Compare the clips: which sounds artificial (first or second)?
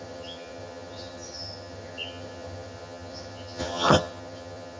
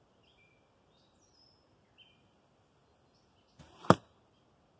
first